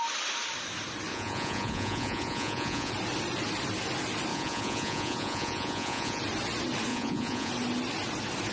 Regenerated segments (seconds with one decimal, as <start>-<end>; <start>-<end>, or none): 1.1-2.9; 4.3-6.2; 6.9-7.5